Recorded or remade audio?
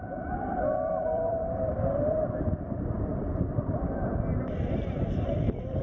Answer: remade